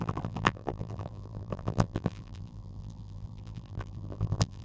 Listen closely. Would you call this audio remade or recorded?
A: remade